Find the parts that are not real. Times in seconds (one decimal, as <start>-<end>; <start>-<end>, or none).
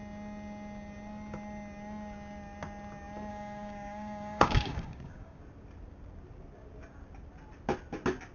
3.3-5.4